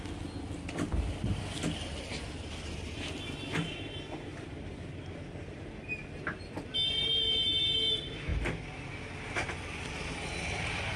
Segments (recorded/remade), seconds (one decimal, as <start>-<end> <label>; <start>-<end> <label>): 0.0-11.0 recorded